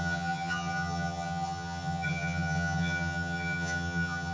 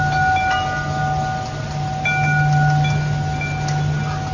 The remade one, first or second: first